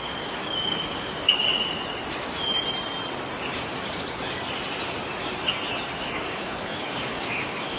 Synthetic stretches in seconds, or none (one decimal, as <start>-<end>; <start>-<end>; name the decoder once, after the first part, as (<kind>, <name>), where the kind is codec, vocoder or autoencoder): 0.0-1.4 (codec, DAC); 6.0-7.8